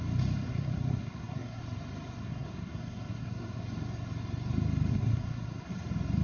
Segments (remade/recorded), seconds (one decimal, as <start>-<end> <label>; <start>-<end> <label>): 0.0-0.5 recorded; 0.5-1.6 remade; 1.6-2.2 recorded; 2.2-3.6 remade; 3.6-4.9 recorded; 4.9-5.7 remade; 5.7-6.2 recorded